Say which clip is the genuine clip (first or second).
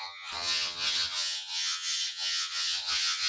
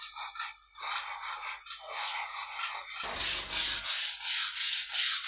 second